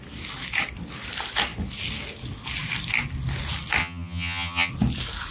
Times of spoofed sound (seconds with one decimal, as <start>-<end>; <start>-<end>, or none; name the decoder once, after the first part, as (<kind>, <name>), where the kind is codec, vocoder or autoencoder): 3.8-4.7 (vocoder, HiFi-GAN)